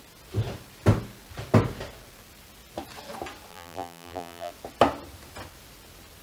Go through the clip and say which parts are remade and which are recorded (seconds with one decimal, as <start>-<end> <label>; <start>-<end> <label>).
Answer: 0.0-3.5 recorded; 3.5-4.5 remade; 4.5-6.2 recorded